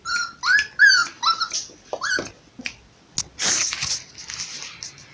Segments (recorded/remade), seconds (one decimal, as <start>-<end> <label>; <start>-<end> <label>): 0.0-5.1 recorded